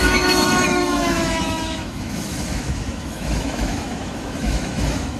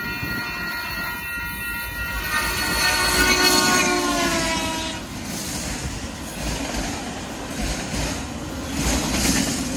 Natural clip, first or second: second